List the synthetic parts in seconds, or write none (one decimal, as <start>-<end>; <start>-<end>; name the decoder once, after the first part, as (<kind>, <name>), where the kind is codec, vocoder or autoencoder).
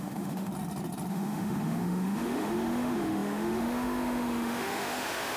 0.0-0.5 (autoencoder, DAC-VAE); 1.1-5.4